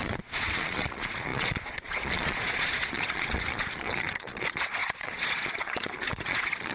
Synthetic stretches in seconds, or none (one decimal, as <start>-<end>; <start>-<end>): 0.0-6.7